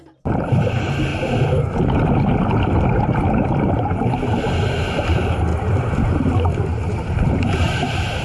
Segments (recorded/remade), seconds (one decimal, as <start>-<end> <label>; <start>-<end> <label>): 0.0-1.1 remade; 1.1-3.9 recorded; 3.9-8.2 remade